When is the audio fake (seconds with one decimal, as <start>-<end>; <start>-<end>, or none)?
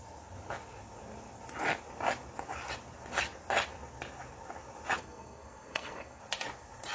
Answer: 5.0-6.2